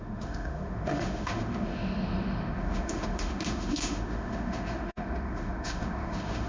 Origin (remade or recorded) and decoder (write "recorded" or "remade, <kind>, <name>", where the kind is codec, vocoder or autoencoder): remade, autoencoder, DAC-VAE